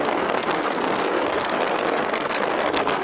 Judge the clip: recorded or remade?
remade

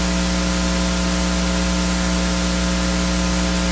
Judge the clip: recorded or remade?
recorded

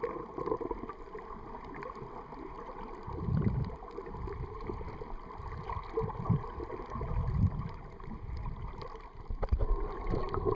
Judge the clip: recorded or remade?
recorded